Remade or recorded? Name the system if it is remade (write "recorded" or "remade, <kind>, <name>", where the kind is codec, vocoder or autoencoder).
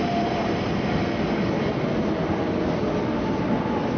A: recorded